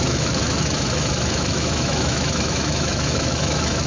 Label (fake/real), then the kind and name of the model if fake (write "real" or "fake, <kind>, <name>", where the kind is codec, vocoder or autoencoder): fake, autoencoder, DAC-VAE